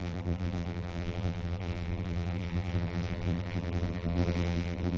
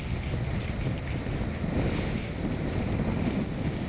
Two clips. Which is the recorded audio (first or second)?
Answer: second